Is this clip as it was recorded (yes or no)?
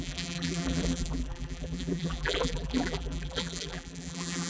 no